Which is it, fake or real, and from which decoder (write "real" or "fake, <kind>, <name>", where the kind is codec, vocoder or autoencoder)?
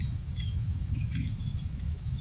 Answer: fake, autoencoder, DAC-VAE